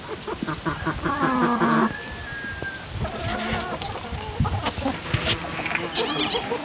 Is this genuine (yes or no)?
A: yes